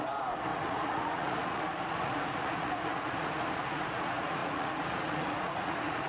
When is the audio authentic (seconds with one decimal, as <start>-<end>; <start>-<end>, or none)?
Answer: none